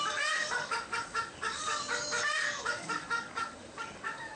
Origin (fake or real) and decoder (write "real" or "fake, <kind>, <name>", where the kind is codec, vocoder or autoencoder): fake, codec, DAC